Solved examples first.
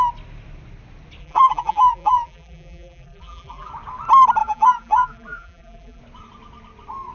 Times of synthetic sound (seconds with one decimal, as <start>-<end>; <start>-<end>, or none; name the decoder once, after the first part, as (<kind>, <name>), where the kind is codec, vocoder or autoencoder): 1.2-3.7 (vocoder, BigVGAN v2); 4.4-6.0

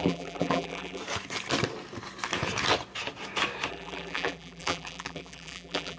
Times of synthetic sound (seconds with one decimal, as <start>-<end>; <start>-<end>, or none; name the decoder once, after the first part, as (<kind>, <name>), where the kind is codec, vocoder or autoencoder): 0.0-1.0 (vocoder, BigVGAN v2); 3.7-6.0

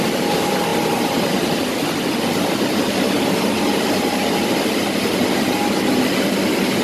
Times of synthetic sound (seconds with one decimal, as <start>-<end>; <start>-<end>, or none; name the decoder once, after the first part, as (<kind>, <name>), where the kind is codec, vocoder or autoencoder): 0.7-1.7 (vocoder, BigVGAN v2)

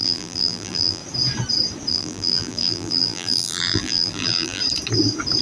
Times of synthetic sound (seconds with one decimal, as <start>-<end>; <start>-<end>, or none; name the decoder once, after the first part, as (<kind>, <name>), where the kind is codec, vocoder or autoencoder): 0.0-1.0 (vocoder, BigVGAN v2); 1.9-4.6

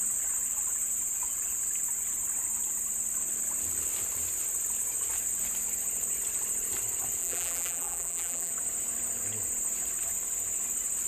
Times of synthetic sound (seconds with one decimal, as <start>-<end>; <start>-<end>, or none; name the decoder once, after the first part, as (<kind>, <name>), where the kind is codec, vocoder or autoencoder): 7.2-8.5 (vocoder, BigVGAN v2)